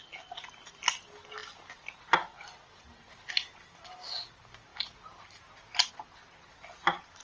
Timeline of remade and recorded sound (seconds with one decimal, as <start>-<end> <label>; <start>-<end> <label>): 0.0-7.2 recorded